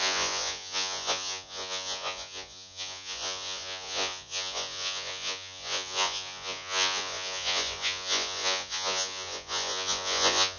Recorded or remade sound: remade